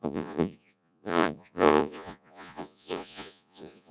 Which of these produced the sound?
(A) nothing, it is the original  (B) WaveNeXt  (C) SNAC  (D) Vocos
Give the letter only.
D